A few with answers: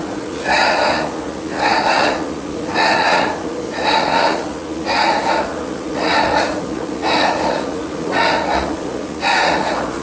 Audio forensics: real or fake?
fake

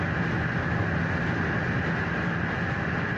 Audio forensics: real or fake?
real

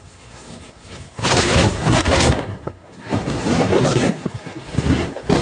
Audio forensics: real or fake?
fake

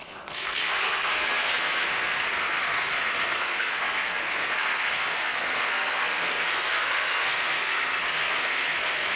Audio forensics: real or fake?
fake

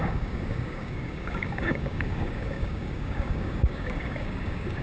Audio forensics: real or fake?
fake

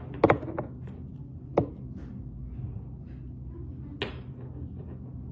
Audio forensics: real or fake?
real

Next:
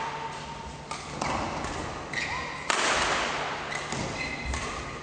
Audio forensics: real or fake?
real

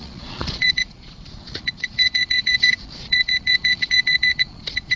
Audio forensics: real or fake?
fake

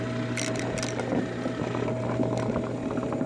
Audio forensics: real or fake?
real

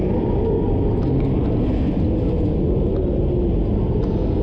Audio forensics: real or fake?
real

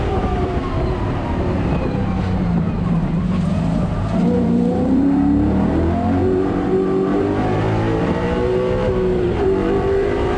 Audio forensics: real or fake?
fake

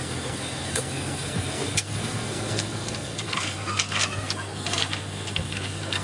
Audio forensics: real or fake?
fake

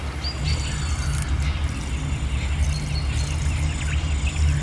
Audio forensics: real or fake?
real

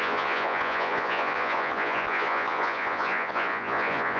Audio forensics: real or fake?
fake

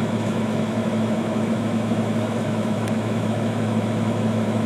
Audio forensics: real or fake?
fake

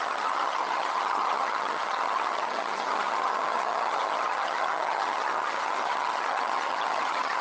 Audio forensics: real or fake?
fake